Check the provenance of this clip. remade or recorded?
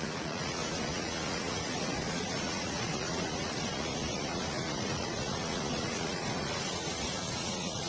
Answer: remade